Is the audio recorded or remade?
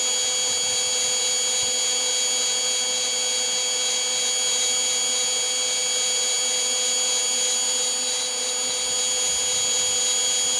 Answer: recorded